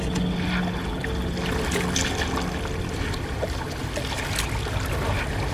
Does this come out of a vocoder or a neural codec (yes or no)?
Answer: no